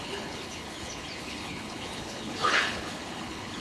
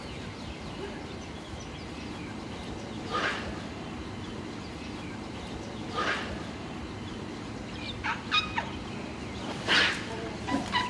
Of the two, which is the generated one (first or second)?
first